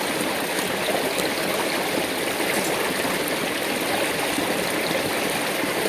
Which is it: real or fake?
real